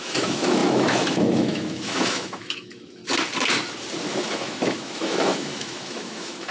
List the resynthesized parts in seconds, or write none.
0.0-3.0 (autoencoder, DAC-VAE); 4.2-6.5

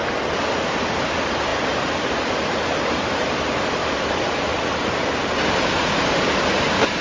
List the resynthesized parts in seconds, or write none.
none